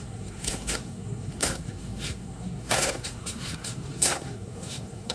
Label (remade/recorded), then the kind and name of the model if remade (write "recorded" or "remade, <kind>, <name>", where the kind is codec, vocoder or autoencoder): remade, codec, SNAC